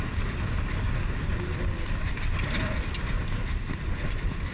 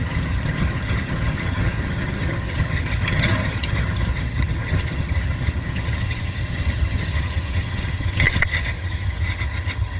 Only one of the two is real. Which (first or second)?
first